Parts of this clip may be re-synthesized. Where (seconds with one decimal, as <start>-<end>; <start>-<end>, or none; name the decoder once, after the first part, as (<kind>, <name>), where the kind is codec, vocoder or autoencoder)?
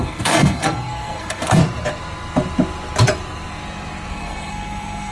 0.0-1.6 (codec, SNAC); 4.1-5.1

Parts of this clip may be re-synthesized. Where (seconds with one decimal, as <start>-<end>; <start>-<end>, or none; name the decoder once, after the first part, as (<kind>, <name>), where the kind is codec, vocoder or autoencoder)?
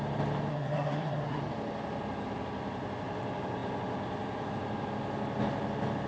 0.5-1.4 (codec, SNAC)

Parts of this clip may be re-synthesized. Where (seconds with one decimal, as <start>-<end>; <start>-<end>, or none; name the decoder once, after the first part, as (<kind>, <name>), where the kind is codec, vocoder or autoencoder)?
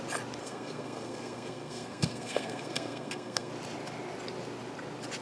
0.4-3.5 (codec, SNAC)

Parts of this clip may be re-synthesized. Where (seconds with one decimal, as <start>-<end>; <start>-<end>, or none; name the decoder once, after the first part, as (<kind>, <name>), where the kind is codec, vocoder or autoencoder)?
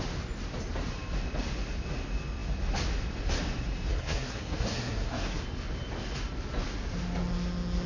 3.9-5.4 (codec, SNAC)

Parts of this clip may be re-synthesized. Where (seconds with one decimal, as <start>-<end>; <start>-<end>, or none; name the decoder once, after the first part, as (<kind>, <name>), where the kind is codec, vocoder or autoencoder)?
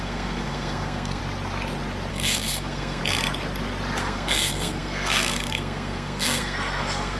0.0-1.2 (codec, SNAC); 2.1-3.0; 4.0-7.2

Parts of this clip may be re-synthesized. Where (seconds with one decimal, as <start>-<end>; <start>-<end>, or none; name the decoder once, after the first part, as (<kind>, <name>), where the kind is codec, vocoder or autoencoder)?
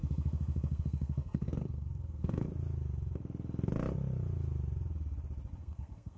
0.0-2.5 (codec, SNAC); 5.6-6.2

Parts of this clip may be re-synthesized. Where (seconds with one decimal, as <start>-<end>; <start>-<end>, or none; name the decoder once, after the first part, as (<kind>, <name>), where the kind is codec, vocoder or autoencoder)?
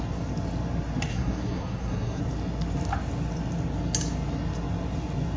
1.1-2.2 (codec, SNAC)